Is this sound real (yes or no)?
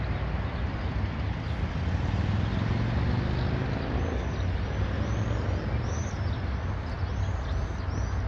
yes